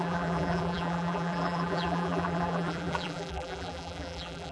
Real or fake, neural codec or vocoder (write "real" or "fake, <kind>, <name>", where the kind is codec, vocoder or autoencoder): fake, vocoder, BigVGAN v2